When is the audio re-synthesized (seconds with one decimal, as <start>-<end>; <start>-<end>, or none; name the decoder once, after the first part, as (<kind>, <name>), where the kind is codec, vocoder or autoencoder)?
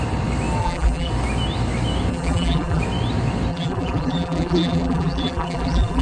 0.6-1.1 (vocoder, BigVGAN v2); 2.1-2.8; 3.5-6.0